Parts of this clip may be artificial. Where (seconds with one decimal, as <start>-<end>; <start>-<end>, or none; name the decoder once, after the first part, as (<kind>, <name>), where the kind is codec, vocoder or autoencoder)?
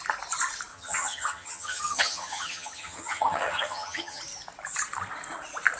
0.7-4.2 (vocoder, HiFi-GAN)